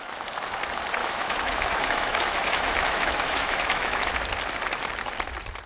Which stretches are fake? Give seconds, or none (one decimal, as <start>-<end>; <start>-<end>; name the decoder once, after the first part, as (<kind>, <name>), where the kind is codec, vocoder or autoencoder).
1.0-4.1 (autoencoder, DAC-VAE)